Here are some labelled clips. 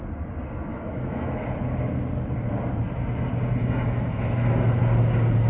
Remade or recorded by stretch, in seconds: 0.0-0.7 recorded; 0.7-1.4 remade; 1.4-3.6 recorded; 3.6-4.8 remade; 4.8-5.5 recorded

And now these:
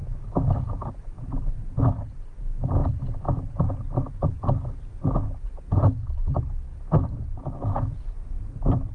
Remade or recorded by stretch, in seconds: 0.0-8.9 recorded

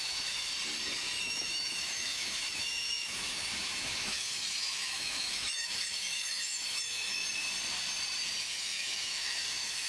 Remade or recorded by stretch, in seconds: 0.0-0.5 remade; 0.5-1.2 recorded; 1.2-7.2 remade; 7.2-8.4 recorded; 8.4-9.9 remade

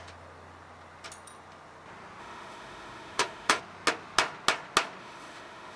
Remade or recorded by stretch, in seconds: 0.0-2.2 recorded; 2.2-3.6 remade; 3.6-5.0 recorded; 5.0-5.8 remade

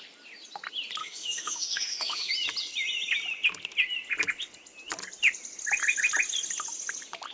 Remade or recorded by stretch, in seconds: 0.0-1.0 recorded; 1.0-2.3 remade; 2.3-7.3 recorded